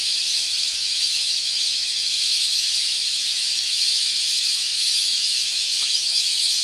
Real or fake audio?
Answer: fake